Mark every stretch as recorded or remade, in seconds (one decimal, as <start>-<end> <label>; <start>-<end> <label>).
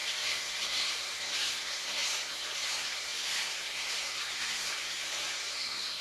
0.0-6.0 remade